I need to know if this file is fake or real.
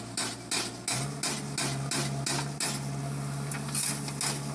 real